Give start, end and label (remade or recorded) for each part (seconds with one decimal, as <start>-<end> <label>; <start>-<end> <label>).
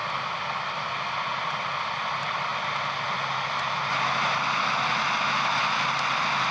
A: 0.0-6.5 recorded